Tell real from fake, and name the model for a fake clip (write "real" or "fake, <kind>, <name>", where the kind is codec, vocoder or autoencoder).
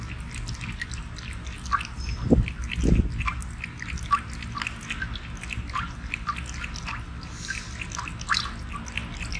real